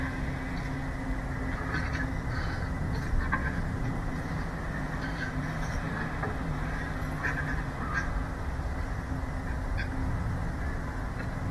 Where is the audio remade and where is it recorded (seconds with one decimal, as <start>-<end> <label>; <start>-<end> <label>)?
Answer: 0.0-3.4 recorded; 3.4-6.9 remade; 6.9-10.0 recorded; 10.0-10.6 remade; 10.6-11.5 recorded